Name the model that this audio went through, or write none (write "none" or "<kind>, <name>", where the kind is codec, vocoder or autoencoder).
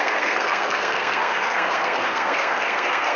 codec, SNAC